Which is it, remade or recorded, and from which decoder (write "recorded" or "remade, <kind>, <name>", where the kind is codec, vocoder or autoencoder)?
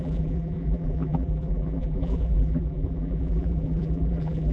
remade, vocoder, BigVGAN v2